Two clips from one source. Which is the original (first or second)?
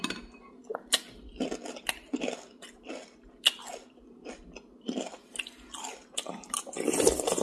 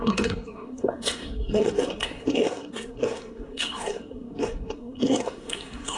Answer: first